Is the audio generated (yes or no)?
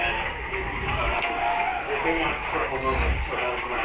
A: yes